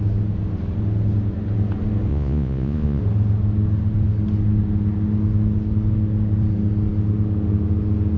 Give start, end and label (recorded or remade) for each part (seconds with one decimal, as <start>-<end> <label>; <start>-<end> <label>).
0.0-2.1 recorded; 2.1-3.0 remade; 3.0-8.2 recorded

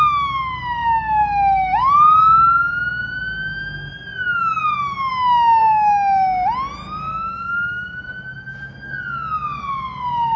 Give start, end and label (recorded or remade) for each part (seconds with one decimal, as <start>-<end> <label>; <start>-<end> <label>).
0.0-10.4 recorded